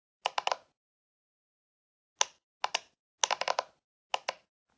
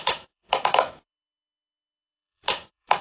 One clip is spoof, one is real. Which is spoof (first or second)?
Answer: second